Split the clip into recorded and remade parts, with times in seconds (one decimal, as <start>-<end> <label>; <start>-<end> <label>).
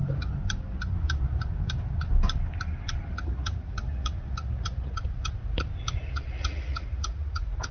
0.0-3.1 recorded; 3.1-5.4 remade; 5.4-6.1 recorded; 6.1-7.7 remade